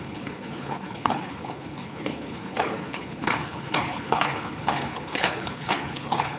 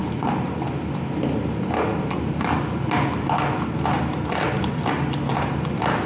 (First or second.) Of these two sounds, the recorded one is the second